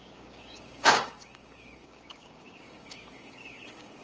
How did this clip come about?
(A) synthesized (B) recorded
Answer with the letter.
A